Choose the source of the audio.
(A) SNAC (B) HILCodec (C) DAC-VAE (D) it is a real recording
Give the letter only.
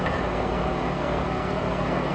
A